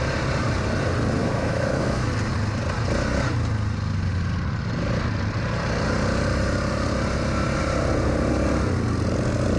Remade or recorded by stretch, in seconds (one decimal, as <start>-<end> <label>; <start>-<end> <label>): 0.0-1.2 recorded; 1.2-2.1 remade; 2.1-9.6 recorded